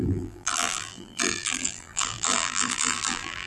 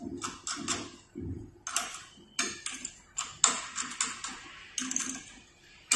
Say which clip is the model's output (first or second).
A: first